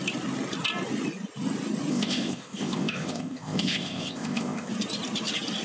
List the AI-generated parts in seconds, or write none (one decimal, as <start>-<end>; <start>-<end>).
1.9-4.7